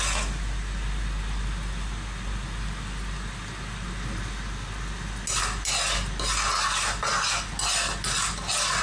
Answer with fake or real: real